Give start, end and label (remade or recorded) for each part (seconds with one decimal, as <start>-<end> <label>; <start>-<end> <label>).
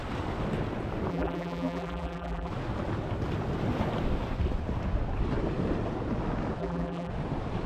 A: 0.0-1.1 recorded; 1.1-2.5 remade; 2.5-6.6 recorded; 6.6-7.1 remade; 7.1-7.7 recorded